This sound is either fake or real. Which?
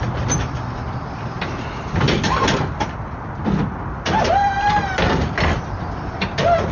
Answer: fake